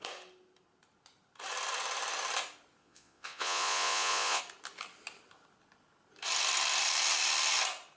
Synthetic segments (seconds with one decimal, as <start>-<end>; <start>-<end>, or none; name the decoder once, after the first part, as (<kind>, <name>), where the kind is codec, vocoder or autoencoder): 2.8-4.4 (vocoder, Vocos)